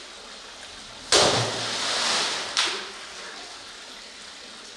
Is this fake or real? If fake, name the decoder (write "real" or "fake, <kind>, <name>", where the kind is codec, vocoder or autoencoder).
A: real